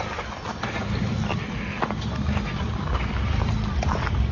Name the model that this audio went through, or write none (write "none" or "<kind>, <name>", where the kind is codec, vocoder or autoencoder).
none